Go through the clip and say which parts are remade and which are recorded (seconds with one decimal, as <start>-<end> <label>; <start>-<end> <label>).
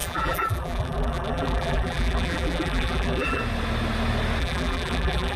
0.0-3.4 remade; 3.4-4.4 recorded; 4.4-5.4 remade